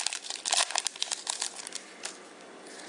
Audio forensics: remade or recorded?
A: recorded